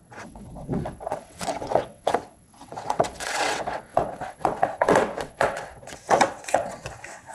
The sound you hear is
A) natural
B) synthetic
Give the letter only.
B